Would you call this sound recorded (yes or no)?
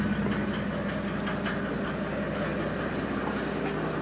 yes